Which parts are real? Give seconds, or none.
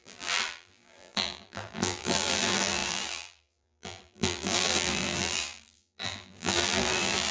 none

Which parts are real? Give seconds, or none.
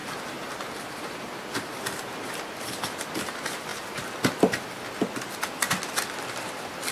0.0-1.0; 3.7-5.5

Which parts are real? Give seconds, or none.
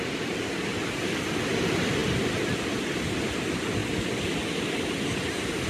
0.0-5.7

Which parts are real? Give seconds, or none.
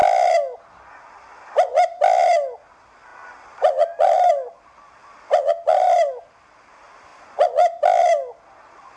0.0-9.0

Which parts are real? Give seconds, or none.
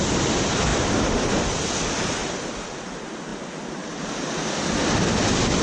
0.0-0.7; 1.4-3.3; 4.1-5.6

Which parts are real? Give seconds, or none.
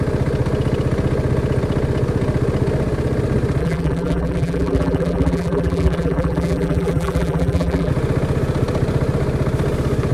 0.0-3.6; 7.9-10.1